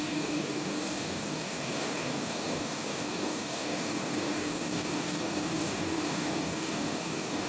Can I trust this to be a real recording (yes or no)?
no